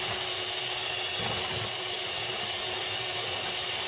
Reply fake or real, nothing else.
real